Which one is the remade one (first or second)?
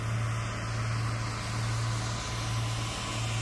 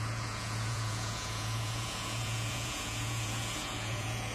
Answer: second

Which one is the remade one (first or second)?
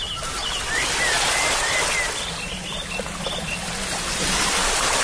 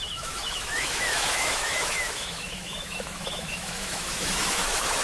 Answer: second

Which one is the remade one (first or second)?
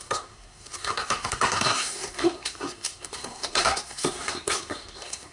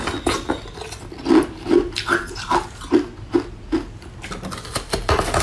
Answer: first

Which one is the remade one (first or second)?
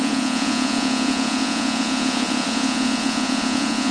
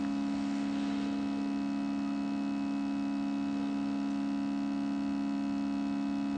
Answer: first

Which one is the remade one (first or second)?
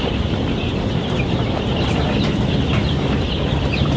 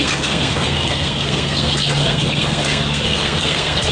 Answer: second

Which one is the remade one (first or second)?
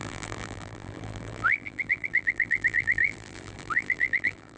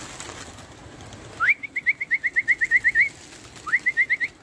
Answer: first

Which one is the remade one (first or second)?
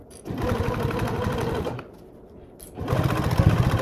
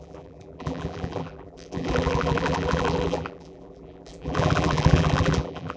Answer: second